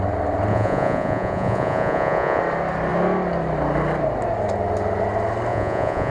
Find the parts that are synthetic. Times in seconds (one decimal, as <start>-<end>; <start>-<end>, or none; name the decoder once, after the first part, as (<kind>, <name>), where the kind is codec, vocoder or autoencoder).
0.5-2.4 (vocoder, Vocos); 5.5-6.1